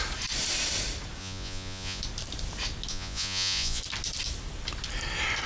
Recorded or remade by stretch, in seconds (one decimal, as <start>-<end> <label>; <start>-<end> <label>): 0.0-1.2 recorded; 1.2-2.0 remade; 2.0-2.9 recorded; 2.9-3.8 remade; 3.8-5.5 recorded